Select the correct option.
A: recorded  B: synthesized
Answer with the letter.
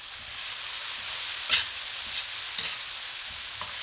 A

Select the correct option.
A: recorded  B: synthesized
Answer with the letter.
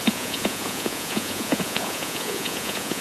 B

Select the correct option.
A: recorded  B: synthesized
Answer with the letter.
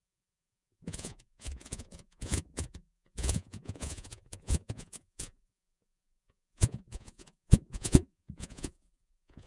B